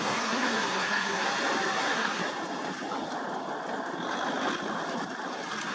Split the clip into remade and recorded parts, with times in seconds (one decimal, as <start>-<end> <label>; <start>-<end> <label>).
0.0-1.3 remade; 1.3-1.8 recorded; 1.8-2.2 remade; 2.2-5.7 recorded